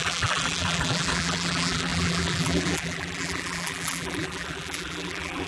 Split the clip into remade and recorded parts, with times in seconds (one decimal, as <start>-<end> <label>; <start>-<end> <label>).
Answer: 0.0-5.5 remade